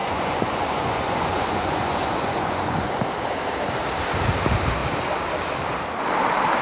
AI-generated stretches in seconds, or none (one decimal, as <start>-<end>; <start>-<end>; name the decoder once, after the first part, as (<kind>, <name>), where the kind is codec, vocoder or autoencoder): 0.0-3.0 (vocoder, Vocos)